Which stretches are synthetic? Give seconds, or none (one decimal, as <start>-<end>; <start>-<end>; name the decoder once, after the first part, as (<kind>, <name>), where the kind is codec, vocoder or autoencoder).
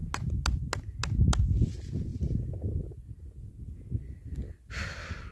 none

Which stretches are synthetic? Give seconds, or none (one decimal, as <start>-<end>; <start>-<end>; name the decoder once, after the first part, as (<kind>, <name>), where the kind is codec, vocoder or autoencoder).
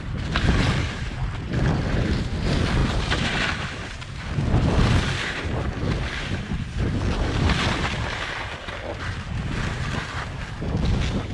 none